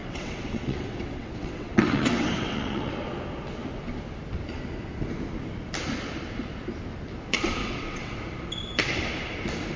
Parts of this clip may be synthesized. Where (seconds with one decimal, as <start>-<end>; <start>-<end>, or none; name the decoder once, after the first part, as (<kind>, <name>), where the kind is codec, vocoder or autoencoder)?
0.0-2.9 (vocoder, WaveNeXt); 7.6-8.2